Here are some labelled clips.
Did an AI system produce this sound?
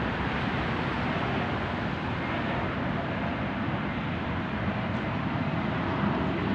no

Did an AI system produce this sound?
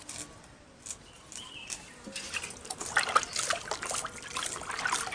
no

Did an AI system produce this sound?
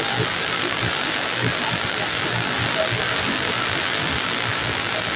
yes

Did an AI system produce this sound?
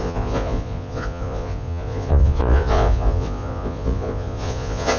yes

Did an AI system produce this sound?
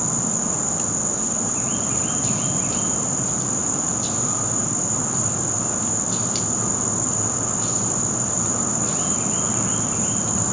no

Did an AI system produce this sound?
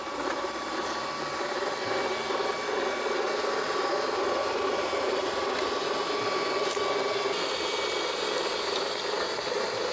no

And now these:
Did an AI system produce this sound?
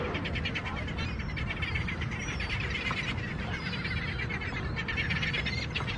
no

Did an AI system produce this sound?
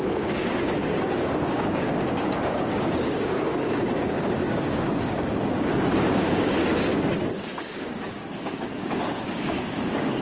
yes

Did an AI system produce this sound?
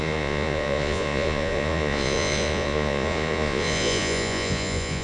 yes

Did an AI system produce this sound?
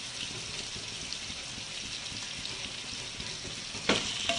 no